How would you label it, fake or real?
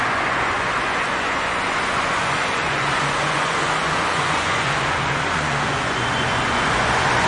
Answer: fake